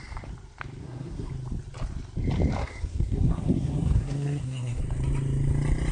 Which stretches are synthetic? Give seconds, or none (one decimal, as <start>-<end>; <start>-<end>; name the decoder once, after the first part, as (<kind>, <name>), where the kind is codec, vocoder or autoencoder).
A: 0.8-1.3 (codec, SNAC); 2.6-4.8